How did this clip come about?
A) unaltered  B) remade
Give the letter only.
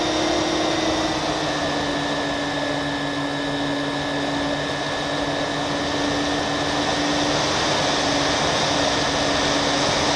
A